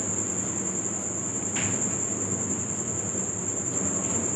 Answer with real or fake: real